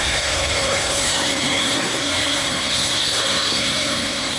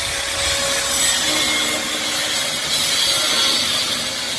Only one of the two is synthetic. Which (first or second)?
first